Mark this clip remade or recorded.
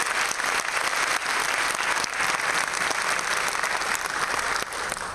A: recorded